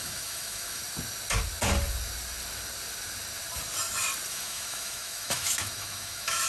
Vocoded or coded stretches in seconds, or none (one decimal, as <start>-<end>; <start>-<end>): 0.0-0.8; 4.3-6.5